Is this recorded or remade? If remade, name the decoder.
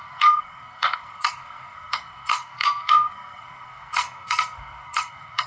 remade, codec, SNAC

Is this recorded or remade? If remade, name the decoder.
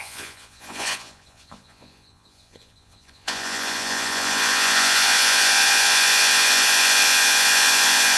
remade, vocoder, Vocos